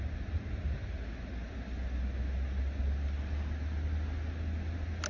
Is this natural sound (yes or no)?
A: yes